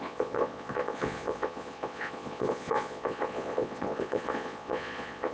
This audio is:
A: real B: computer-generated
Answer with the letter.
B